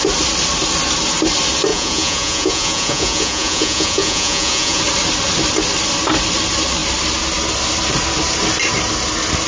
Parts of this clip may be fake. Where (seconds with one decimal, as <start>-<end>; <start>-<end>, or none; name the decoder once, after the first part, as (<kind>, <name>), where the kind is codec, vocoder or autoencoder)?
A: 1.7-4.8 (vocoder, Vocos)